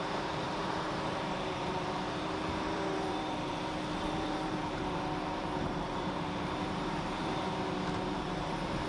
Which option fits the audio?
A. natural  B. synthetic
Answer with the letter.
B